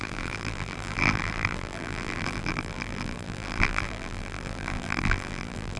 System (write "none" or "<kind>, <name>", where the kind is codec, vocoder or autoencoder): vocoder, BigVGAN v2